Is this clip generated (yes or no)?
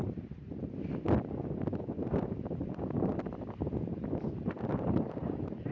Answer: no